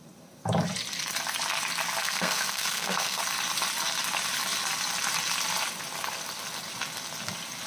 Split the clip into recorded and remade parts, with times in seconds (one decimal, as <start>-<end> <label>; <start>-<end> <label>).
0.0-2.0 recorded; 2.0-3.2 remade; 3.2-7.7 recorded